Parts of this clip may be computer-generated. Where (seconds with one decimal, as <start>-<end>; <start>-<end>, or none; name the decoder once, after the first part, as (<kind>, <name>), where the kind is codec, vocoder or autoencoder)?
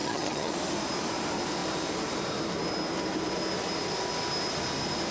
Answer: 0.0-0.5 (vocoder, HiFi-GAN)